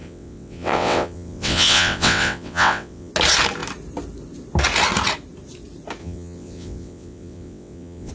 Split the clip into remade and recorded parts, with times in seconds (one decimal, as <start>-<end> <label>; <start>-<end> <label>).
0.0-3.1 remade; 3.1-6.0 recorded; 6.0-8.1 remade